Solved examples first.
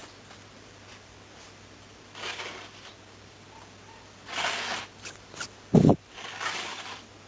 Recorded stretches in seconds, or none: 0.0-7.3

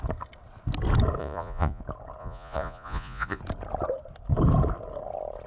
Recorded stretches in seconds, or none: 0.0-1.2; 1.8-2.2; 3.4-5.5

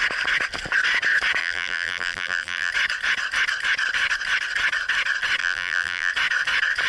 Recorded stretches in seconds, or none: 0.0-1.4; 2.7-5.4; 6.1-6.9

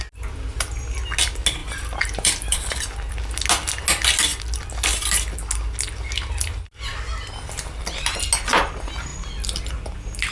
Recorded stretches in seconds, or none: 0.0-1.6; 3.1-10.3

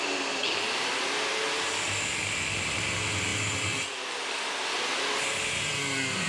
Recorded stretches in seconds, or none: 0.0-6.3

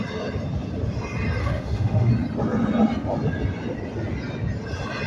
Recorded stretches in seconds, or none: 0.0-1.4; 2.1-5.1

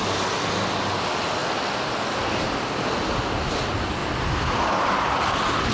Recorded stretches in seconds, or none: 0.0-4.0; 4.7-5.7